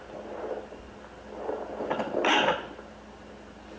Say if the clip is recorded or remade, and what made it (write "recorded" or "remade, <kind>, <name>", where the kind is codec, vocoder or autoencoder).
recorded